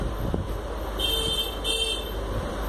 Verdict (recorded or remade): recorded